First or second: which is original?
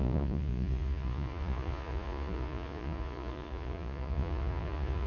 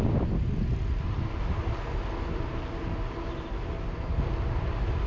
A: second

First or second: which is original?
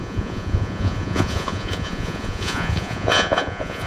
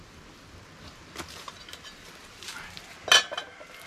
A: second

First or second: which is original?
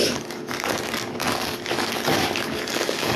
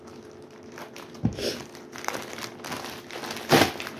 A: second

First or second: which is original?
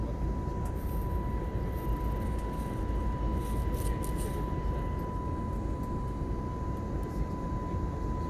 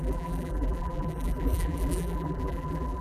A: first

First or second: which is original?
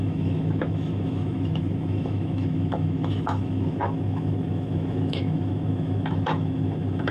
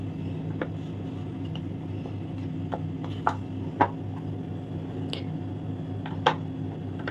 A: second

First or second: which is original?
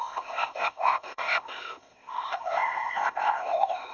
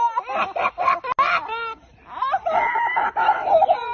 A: second